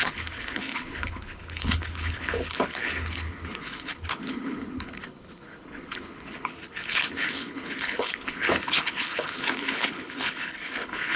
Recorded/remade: remade